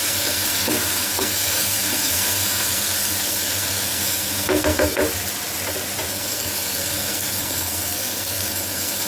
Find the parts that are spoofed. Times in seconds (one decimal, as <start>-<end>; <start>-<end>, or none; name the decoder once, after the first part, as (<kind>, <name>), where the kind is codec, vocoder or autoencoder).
0.0-5.0 (codec, SNAC); 6.1-9.1